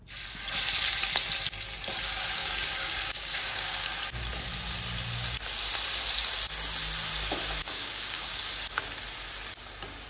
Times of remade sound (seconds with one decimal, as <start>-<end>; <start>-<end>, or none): 2.4-4.0; 7.6-8.4